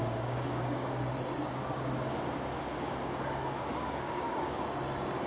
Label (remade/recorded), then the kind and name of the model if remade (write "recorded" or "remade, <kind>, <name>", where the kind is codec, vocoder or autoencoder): remade, codec, DAC